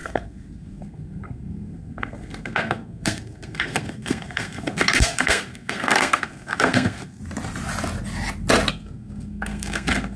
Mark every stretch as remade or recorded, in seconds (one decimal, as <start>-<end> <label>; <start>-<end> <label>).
0.0-7.2 remade; 7.2-8.7 recorded; 8.7-10.2 remade